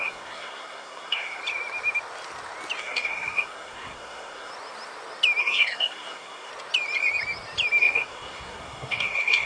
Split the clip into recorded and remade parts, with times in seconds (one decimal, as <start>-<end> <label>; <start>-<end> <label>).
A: 0.0-1.4 remade; 1.4-2.8 recorded; 2.8-4.5 remade; 4.5-5.4 recorded; 5.4-6.5 remade; 6.5-7.8 recorded; 7.8-9.5 remade